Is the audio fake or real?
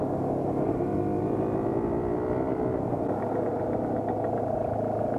real